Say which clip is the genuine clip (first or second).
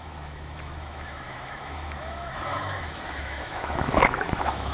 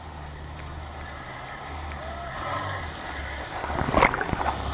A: second